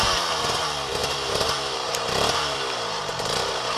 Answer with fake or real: fake